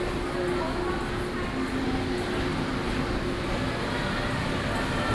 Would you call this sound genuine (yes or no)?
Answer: yes